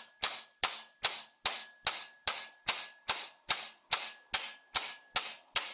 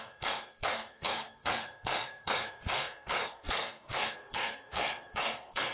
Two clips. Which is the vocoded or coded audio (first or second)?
second